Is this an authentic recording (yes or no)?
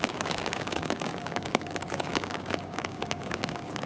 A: no